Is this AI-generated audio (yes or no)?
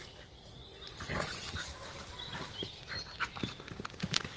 no